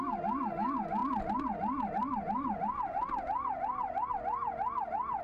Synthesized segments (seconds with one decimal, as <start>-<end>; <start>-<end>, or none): none